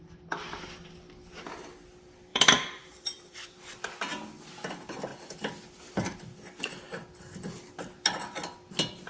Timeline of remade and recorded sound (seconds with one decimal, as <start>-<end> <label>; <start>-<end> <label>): 0.0-2.3 recorded; 2.3-3.6 remade; 3.6-9.1 recorded